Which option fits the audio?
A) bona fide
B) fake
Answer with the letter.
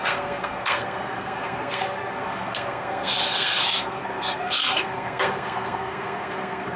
B